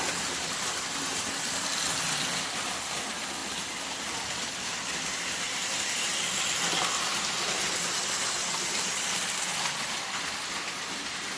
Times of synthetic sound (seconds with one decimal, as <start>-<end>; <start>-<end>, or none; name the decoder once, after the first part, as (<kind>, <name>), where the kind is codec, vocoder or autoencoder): none